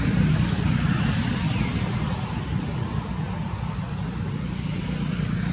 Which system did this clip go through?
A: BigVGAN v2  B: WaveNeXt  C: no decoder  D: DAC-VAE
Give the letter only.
A